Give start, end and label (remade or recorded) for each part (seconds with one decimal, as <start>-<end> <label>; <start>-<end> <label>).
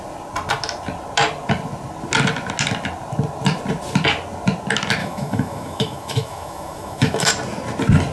0.0-5.0 recorded; 5.0-7.3 remade; 7.3-8.1 recorded